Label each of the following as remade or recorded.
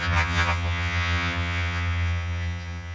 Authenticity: remade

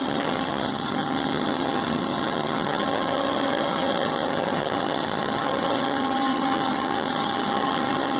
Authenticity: remade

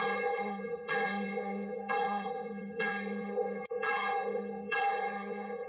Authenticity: remade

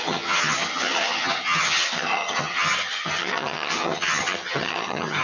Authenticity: remade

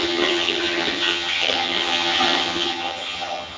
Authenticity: remade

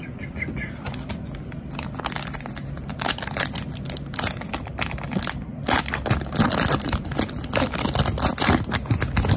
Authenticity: recorded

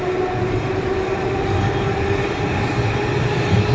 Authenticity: recorded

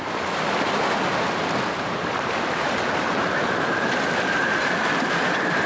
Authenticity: recorded